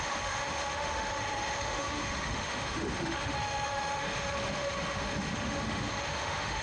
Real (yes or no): no